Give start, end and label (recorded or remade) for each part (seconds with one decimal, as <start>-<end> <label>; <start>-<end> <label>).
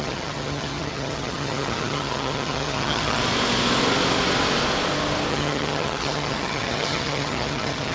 0.0-3.2 remade; 3.2-5.3 recorded; 5.3-7.9 remade